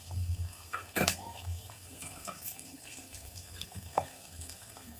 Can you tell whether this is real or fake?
fake